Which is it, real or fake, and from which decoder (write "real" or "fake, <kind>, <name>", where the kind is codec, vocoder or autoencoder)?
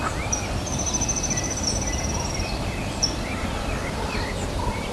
fake, vocoder, BigVGAN v2